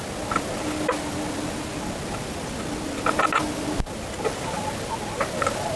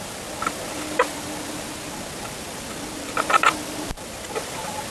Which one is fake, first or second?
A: second